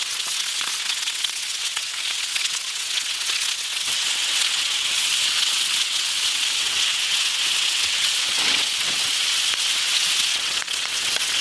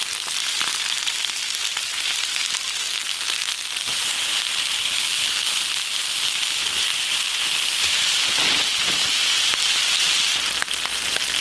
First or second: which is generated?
first